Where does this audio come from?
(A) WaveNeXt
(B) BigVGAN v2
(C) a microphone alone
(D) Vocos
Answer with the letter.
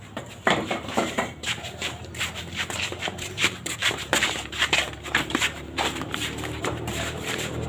B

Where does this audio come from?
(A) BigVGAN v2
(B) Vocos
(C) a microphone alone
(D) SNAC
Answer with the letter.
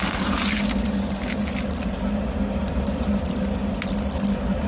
A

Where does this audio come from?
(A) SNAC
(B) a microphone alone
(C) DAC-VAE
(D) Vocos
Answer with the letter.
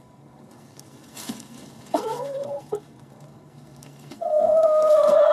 A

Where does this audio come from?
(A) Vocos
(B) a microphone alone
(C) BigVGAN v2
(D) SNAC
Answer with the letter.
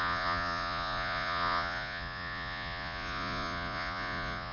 A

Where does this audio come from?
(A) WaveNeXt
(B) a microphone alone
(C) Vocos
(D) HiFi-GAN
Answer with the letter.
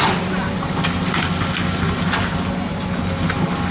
B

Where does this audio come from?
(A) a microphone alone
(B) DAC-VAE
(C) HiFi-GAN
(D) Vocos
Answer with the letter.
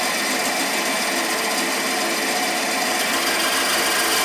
A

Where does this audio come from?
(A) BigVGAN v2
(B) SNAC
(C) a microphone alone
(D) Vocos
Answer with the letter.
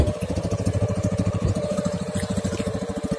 A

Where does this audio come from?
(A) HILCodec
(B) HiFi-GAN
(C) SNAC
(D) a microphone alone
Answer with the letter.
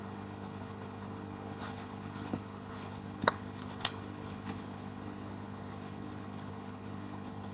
A